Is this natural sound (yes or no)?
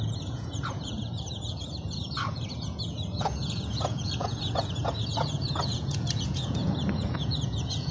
no